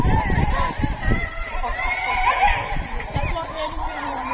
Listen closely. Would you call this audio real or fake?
fake